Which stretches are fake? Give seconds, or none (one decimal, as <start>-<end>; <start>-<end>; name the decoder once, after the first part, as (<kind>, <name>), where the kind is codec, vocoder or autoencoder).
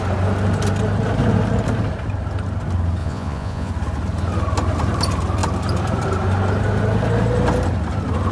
3.0-3.7 (vocoder, Vocos)